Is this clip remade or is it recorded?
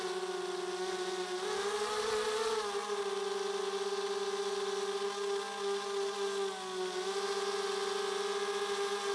recorded